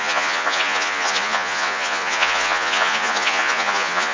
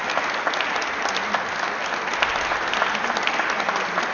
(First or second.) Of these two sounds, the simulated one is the first